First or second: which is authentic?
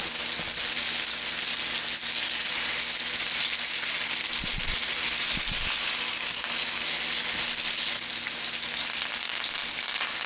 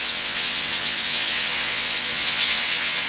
first